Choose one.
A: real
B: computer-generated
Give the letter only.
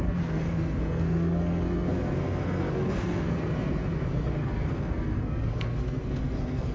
B